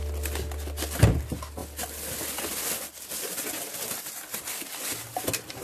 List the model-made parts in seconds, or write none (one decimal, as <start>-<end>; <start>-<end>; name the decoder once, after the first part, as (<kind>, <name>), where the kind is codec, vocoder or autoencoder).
none